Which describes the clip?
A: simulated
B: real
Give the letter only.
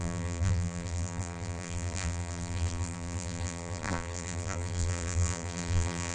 A